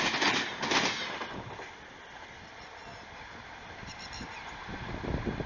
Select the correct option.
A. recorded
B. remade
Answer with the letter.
B